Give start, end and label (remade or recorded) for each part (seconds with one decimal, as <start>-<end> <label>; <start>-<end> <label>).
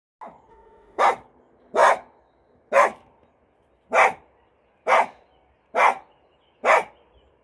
0.0-0.5 recorded; 0.5-1.0 remade; 1.0-7.4 recorded